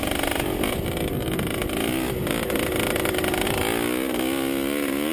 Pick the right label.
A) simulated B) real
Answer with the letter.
B